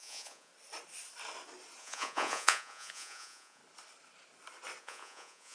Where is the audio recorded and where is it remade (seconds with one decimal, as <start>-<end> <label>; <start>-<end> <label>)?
0.0-0.5 remade; 0.5-1.8 recorded; 1.8-3.6 remade; 3.6-4.8 recorded; 4.8-5.5 remade